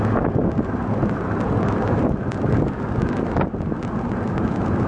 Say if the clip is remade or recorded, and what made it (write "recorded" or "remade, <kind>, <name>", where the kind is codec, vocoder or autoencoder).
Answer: recorded